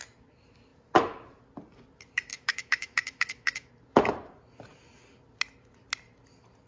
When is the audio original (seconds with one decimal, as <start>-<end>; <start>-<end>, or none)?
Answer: 0.0-2.3; 3.7-6.7